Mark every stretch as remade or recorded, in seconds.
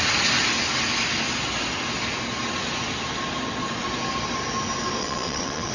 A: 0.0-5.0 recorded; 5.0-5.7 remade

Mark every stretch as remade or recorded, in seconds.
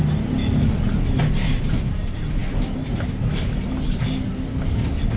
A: 0.0-5.2 recorded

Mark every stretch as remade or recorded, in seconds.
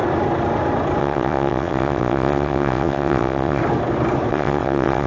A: 0.0-1.0 recorded; 1.0-3.6 remade; 3.6-4.3 recorded; 4.3-5.1 remade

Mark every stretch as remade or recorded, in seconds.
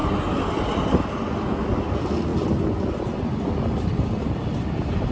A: 0.0-5.1 recorded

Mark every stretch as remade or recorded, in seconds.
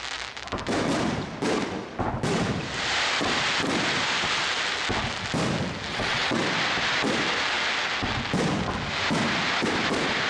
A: 0.0-5.9 recorded; 5.9-6.4 remade; 6.4-10.3 recorded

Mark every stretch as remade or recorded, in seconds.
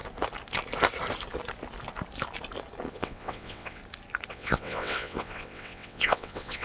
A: 0.0-2.9 recorded; 2.9-3.8 remade; 3.8-4.3 recorded; 4.3-6.6 remade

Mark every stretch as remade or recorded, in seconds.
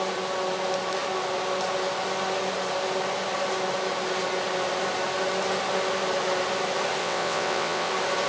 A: 0.0-7.0 recorded; 7.0-7.9 remade; 7.9-8.3 recorded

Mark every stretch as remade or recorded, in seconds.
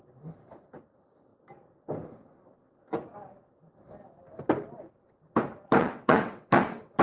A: 0.0-5.8 recorded; 5.8-7.0 remade